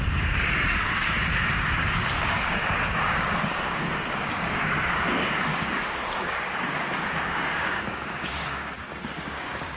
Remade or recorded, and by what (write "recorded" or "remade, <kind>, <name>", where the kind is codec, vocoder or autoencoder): remade, codec, DAC